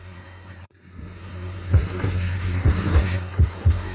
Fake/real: fake